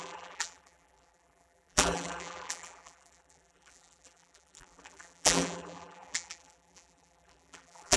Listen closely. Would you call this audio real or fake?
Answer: fake